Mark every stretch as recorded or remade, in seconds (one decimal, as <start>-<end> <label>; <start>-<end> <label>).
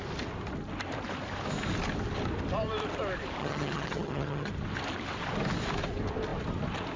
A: 0.0-3.4 recorded; 3.4-4.5 remade; 4.5-7.0 recorded